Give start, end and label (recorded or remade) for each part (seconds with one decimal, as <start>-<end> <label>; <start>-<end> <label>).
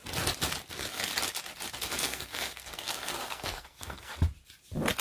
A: 0.0-0.7 recorded; 0.7-1.1 remade; 1.1-1.9 recorded; 1.9-4.1 remade; 4.1-5.0 recorded